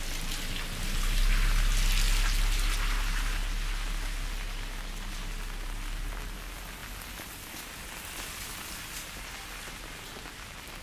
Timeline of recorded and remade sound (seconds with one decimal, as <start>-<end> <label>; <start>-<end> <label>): 0.0-10.8 recorded